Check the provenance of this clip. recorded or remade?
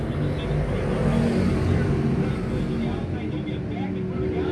recorded